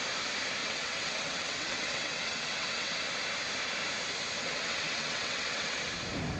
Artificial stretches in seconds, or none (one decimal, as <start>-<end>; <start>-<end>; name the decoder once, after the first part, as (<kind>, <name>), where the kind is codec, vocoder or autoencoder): 0.6-3.0 (vocoder, WaveNeXt); 4.4-5.8